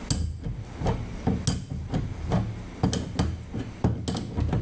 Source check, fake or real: real